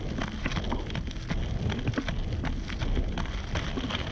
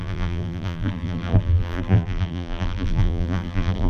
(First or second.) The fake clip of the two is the second